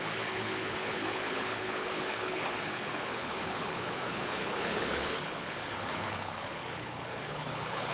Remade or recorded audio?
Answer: remade